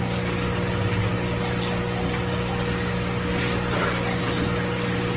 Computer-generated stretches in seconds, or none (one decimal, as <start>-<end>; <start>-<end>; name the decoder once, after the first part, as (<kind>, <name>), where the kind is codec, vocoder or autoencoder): none

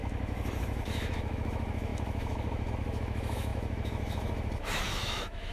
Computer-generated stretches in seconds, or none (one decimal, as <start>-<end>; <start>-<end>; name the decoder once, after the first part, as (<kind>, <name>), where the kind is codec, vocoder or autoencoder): 0.0-5.5 (autoencoder, DAC-VAE)

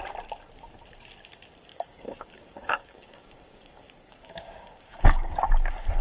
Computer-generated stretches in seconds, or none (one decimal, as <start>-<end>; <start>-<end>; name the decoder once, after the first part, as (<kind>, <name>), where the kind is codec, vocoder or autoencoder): 1.7-5.3 (codec, DAC)

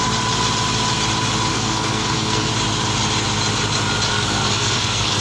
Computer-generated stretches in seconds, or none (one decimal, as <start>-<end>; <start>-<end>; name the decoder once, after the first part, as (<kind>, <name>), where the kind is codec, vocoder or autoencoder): 1.5-2.5 (codec, SNAC); 4.1-5.2

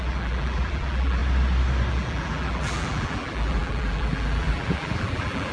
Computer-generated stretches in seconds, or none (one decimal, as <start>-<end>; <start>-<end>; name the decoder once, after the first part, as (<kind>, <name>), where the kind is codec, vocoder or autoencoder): 0.0-1.2 (vocoder, BigVGAN v2); 1.9-5.5

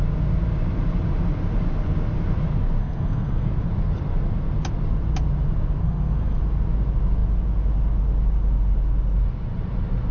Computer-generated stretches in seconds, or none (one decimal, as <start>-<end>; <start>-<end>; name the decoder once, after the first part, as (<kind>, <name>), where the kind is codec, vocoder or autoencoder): 2.8-3.5 (codec, SNAC); 5.8-6.4

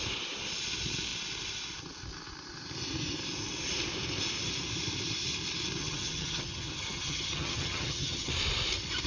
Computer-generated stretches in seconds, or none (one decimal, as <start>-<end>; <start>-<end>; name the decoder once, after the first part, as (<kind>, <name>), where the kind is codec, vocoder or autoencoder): 5.8-8.3 (vocoder, HiFi-GAN)

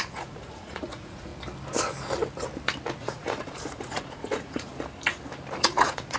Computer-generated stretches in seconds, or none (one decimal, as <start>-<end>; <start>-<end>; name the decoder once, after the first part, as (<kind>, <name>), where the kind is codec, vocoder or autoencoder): 0.0-1.3 (vocoder, Vocos); 3.0-4.7; 5.6-6.2